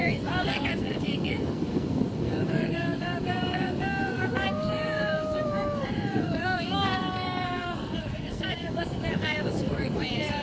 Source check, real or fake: fake